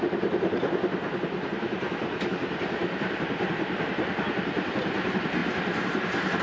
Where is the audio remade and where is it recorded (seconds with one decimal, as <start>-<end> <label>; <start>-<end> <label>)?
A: 0.0-2.8 recorded; 2.8-4.1 remade; 4.1-5.4 recorded; 5.4-6.4 remade